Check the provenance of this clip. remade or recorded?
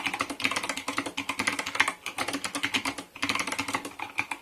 recorded